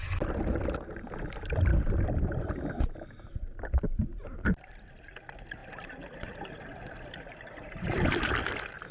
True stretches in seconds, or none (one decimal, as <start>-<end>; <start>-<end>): 0.0-1.7; 2.3-5.6; 7.3-8.9